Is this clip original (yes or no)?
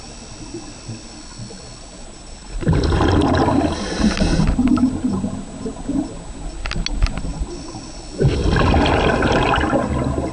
yes